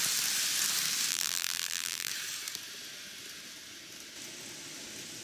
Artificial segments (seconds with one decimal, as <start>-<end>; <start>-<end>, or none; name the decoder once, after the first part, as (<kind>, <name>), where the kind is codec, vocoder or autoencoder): 1.1-2.1 (vocoder, BigVGAN v2)